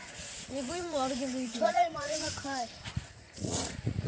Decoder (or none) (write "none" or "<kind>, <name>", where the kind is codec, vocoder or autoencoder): vocoder, Vocos